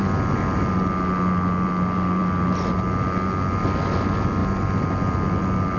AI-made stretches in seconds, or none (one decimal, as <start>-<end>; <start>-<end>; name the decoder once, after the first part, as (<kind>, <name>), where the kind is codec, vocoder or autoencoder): none